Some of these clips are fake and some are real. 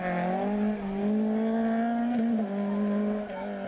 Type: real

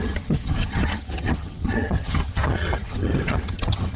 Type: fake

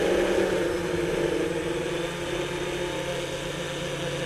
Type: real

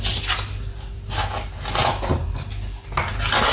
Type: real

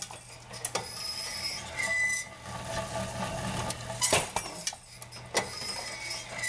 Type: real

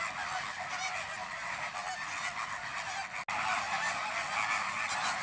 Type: real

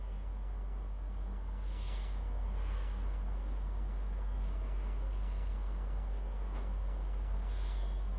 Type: fake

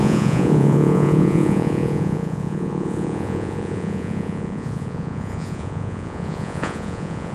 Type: fake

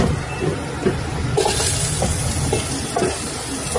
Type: real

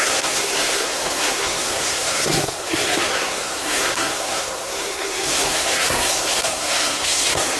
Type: fake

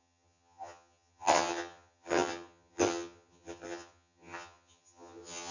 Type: fake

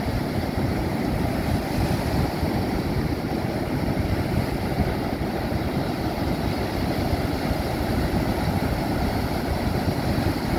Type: real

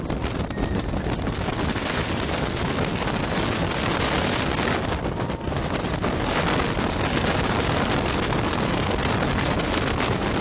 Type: real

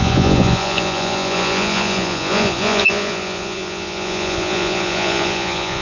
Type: fake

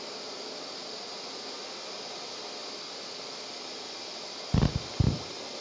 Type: real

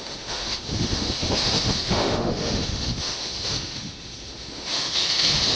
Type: fake